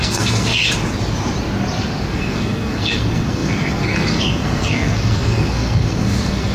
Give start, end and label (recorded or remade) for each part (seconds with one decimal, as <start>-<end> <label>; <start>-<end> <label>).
0.0-0.6 remade; 0.6-2.1 recorded; 2.1-6.5 remade

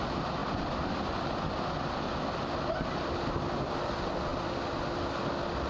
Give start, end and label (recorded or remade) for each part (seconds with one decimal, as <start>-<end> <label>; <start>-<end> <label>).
0.0-5.7 recorded

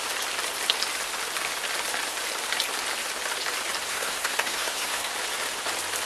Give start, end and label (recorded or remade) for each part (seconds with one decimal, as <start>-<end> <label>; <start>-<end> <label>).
0.0-3.9 recorded; 3.9-5.1 remade; 5.1-6.1 recorded